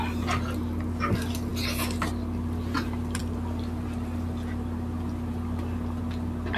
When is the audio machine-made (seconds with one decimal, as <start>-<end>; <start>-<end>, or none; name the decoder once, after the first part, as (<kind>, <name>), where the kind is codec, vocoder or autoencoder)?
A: none